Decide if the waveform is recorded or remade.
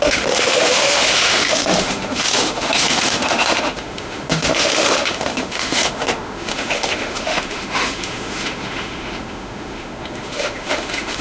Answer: remade